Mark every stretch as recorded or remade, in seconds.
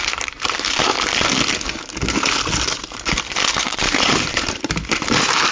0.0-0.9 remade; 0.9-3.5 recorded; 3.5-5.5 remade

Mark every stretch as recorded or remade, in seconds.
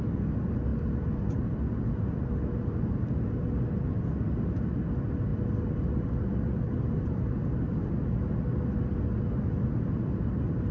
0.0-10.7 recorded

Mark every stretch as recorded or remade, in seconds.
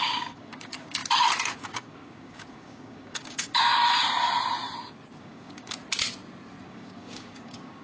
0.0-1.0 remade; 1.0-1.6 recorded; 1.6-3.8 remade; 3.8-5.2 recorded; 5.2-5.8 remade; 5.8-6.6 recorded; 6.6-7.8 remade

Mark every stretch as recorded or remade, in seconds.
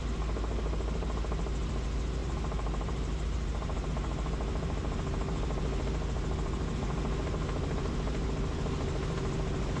0.0-2.2 recorded; 2.2-3.9 remade; 3.9-9.8 recorded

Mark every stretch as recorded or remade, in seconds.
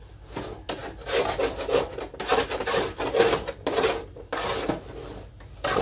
0.0-5.8 recorded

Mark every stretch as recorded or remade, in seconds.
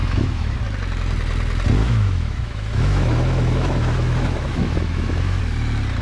0.0-0.6 remade; 0.6-1.8 recorded; 1.8-5.4 remade; 5.4-6.0 recorded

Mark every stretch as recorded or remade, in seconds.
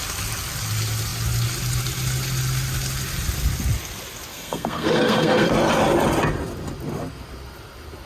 0.0-4.3 recorded; 4.3-5.5 remade; 5.5-8.1 recorded